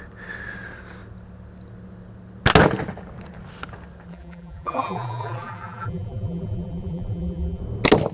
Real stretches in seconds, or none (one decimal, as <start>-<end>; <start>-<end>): 0.0-4.1; 7.6-8.1